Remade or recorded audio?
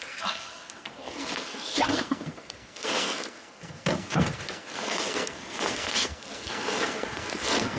remade